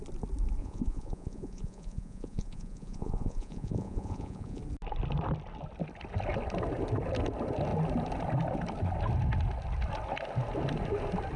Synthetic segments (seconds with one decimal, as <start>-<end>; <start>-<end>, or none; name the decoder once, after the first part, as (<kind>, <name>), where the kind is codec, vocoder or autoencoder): 0.6-4.6 (vocoder, Vocos)